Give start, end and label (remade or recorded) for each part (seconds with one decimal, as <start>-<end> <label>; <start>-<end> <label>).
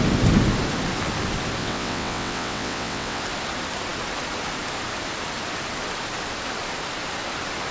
0.0-1.6 recorded; 1.6-3.2 remade; 3.2-7.7 recorded